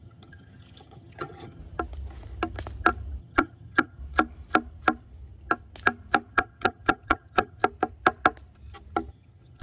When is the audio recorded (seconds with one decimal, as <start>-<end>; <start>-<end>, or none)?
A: 1.6-3.2; 4.0-6.3; 7.6-9.1